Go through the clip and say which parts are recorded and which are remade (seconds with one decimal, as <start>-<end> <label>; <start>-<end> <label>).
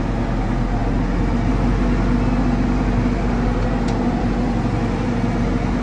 0.0-5.8 recorded